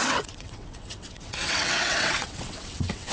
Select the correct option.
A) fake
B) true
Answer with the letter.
A